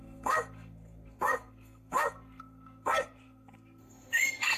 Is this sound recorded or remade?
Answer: remade